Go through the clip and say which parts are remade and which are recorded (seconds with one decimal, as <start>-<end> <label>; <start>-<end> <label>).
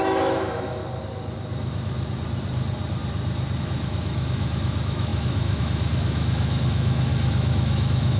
0.0-0.8 remade; 0.8-3.6 recorded; 3.6-8.2 remade